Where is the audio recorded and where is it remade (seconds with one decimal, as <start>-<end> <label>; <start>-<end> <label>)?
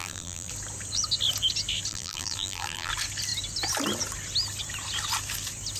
0.0-0.5 remade; 0.5-1.9 recorded; 1.9-2.9 remade; 2.9-5.8 recorded